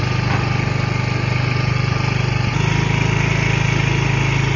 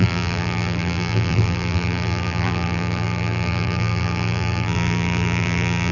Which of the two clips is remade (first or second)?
second